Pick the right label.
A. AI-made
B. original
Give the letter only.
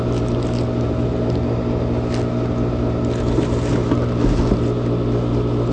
B